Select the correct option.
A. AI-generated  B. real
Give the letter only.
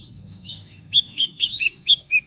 A